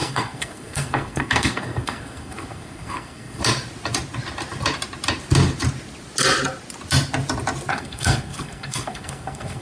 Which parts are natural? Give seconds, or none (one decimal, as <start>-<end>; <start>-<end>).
3.4-7.7